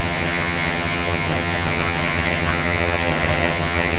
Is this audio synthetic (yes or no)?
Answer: yes